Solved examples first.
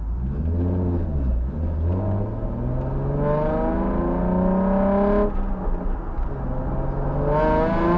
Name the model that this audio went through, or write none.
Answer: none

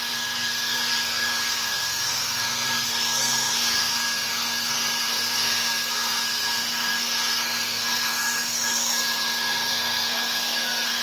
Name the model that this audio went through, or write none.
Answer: codec, SNAC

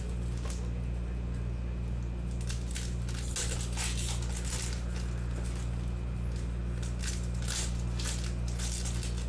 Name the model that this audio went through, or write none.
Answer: none